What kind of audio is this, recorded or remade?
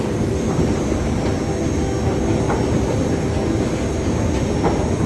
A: recorded